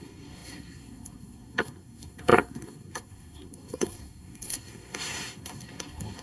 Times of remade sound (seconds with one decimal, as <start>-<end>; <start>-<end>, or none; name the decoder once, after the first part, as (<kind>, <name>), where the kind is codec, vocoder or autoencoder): 0.0-6.2 (codec, SNAC)